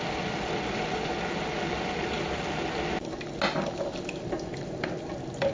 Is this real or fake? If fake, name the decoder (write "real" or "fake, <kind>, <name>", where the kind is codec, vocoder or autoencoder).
real